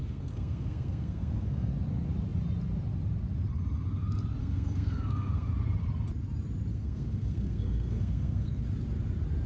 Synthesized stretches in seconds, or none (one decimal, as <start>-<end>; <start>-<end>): 0.0-1.7; 4.4-5.5; 6.7-8.6